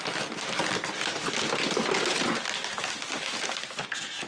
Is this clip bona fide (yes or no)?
yes